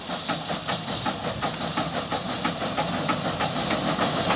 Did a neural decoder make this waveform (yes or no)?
no